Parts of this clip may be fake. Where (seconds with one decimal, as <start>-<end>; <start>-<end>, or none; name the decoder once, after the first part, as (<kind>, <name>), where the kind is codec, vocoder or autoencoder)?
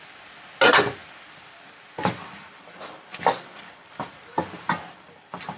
none